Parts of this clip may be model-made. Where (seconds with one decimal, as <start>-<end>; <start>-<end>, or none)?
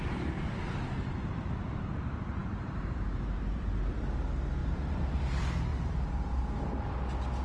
2.4-4.0; 4.6-5.2; 5.7-6.8